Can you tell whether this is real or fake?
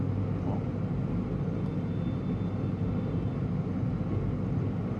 real